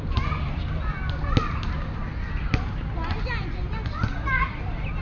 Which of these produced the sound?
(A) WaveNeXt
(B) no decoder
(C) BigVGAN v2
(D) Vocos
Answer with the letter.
B